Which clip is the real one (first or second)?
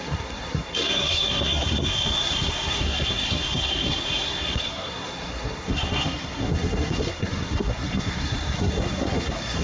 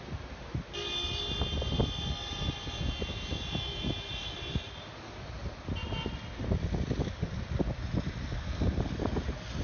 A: second